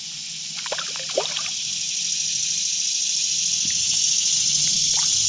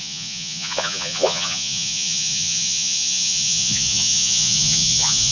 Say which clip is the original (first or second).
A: first